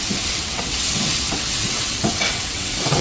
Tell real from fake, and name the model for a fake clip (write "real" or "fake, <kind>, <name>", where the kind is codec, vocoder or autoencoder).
fake, vocoder, WaveNeXt